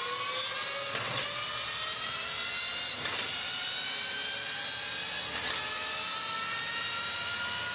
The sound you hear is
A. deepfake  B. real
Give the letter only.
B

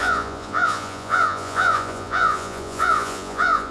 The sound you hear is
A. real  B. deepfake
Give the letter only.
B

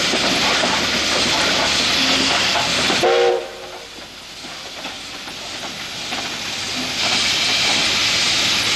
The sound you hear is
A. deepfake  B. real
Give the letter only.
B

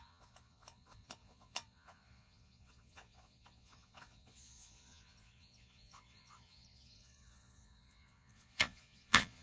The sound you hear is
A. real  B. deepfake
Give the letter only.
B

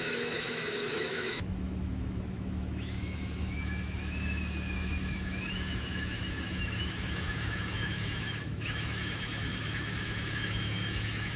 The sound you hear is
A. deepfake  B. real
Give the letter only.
A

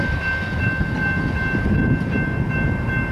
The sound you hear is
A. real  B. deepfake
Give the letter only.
A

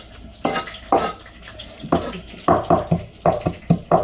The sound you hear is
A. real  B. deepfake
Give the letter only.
A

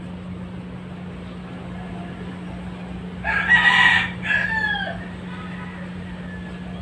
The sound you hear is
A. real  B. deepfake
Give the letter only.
A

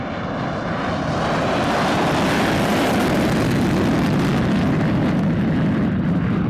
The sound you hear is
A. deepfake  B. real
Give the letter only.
B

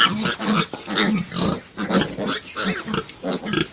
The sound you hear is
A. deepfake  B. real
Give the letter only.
B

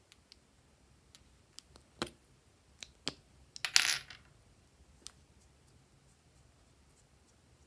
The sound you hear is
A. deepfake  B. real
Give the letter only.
B